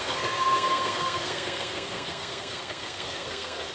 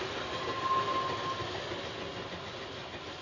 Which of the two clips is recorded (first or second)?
second